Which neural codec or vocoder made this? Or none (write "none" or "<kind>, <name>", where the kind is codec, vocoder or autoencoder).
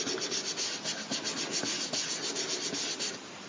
none